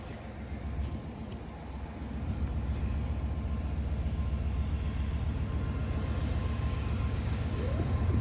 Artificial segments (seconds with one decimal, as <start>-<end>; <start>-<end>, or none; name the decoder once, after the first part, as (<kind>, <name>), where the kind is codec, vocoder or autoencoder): 6.4-7.5 (codec, DAC)